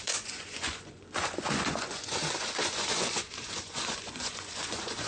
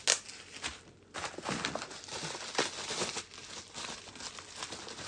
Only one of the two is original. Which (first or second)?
second